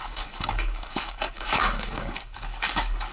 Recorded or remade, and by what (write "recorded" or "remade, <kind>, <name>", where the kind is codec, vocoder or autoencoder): remade, codec, DAC